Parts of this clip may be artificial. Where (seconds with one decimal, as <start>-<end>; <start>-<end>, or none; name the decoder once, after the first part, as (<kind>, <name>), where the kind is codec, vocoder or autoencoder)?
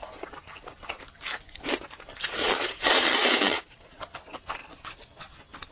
2.1-4.0 (vocoder, Vocos); 4.6-5.2